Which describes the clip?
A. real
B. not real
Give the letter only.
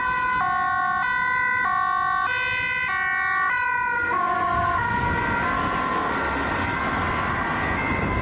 A